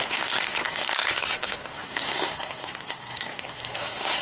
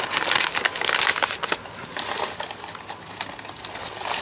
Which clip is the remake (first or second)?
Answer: first